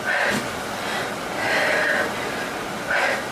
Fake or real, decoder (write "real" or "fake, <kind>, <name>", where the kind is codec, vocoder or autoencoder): real